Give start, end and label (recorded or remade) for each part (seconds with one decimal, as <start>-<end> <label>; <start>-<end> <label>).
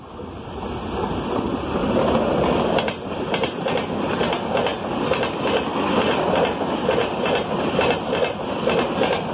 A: 0.0-9.3 recorded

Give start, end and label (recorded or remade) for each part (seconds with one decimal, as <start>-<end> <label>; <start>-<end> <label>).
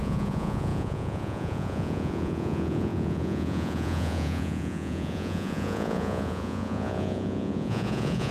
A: 0.0-8.3 remade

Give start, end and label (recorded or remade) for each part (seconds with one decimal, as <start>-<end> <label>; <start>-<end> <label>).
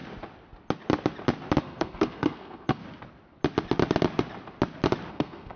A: 0.0-1.6 recorded; 1.6-2.8 remade; 2.8-5.1 recorded; 5.1-5.6 remade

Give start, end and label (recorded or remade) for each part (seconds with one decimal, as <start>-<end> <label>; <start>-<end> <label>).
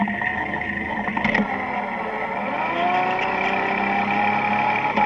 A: 0.0-5.1 recorded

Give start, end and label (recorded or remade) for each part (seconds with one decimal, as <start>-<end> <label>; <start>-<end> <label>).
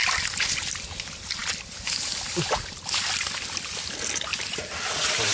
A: 0.0-5.3 recorded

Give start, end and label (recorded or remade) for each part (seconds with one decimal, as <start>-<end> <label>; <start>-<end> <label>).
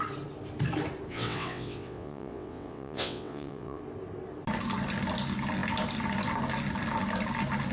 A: 0.0-1.1 recorded; 1.1-3.8 remade; 3.8-7.7 recorded